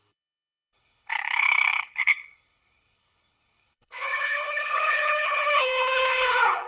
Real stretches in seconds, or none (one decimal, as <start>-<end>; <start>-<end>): none